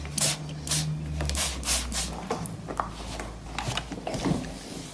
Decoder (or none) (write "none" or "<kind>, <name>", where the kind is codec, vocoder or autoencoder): none